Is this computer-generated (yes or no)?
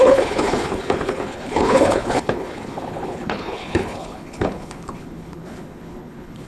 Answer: yes